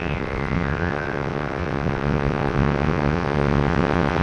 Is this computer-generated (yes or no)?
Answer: yes